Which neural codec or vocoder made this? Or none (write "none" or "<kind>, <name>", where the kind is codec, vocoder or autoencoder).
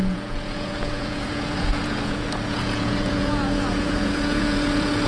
vocoder, Vocos